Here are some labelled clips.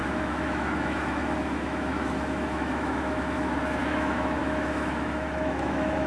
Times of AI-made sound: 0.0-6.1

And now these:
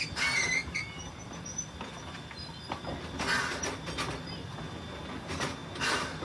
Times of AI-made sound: none

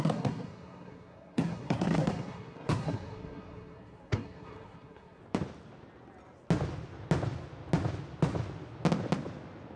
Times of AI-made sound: 0.0-5.2

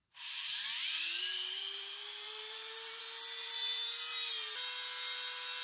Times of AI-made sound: 0.0-3.0; 3.4-4.3

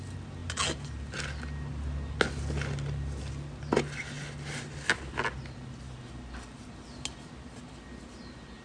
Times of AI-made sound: none